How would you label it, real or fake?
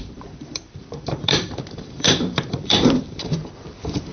fake